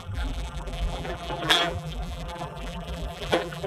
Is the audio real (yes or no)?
no